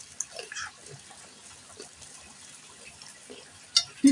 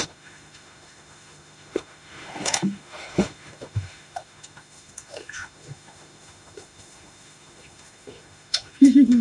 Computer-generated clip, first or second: second